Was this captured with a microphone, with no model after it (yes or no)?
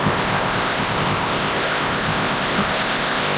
no